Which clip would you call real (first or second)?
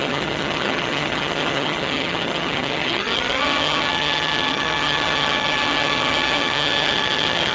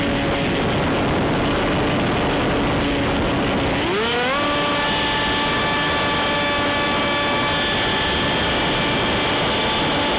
second